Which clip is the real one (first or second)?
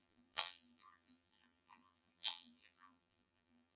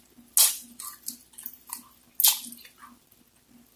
second